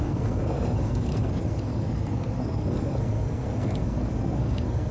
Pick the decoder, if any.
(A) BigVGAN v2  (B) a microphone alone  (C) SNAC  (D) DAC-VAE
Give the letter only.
C